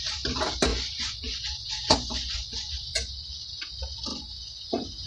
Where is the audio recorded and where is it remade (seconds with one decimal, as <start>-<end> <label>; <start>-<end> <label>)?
0.0-0.7 recorded; 0.7-3.1 remade; 3.1-4.1 recorded; 4.1-5.1 remade

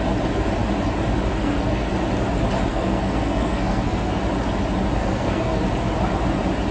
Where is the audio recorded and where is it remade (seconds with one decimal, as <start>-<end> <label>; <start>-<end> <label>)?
0.0-1.3 recorded; 1.3-1.9 remade; 1.9-2.7 recorded; 2.7-4.2 remade; 4.2-5.0 recorded; 5.0-5.6 remade; 5.6-6.7 recorded

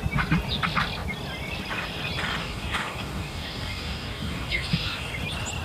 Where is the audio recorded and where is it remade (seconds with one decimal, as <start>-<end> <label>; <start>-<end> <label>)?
0.0-2.4 recorded; 2.4-5.1 remade; 5.1-5.6 recorded

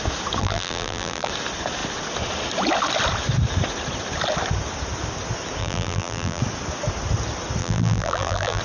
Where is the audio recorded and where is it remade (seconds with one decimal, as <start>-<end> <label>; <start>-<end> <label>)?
0.0-0.4 recorded; 0.4-1.3 remade; 1.3-5.6 recorded; 5.6-6.4 remade; 6.4-7.6 recorded; 7.6-8.6 remade

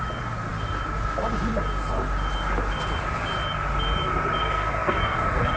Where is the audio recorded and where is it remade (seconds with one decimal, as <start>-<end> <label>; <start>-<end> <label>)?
0.0-4.4 recorded; 4.4-5.6 remade